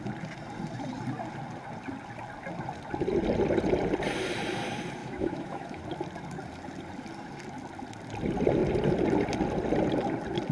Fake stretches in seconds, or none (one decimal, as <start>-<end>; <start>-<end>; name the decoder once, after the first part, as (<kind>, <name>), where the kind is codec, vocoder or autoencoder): 5.0-5.8 (autoencoder, DAC-VAE)